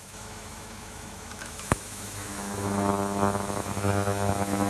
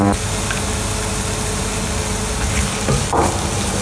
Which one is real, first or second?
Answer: second